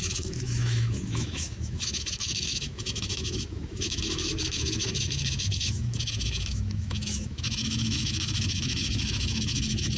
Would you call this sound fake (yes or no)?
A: yes